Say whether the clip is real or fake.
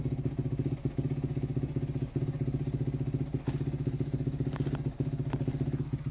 real